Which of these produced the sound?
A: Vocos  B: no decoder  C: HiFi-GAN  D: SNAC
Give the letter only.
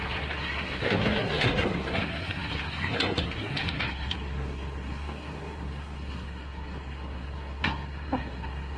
D